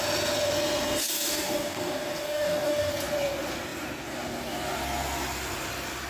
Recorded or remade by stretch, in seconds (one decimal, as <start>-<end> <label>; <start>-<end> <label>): 0.0-1.0 recorded; 1.0-2.9 remade; 2.9-6.1 recorded